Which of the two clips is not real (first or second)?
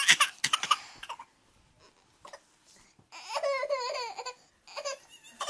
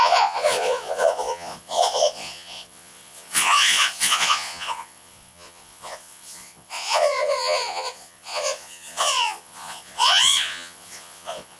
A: second